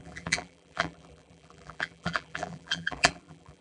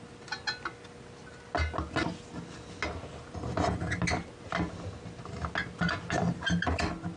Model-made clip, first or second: first